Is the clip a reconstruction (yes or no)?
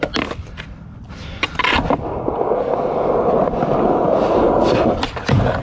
no